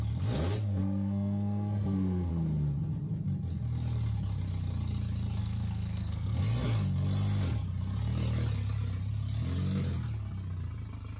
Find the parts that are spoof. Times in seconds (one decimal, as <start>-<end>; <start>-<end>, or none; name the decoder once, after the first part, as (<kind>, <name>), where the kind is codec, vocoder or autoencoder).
0.8-2.3 (codec, SNAC); 5.4-6.4